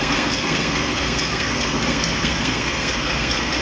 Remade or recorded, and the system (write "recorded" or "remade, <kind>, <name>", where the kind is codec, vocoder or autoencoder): remade, codec, SNAC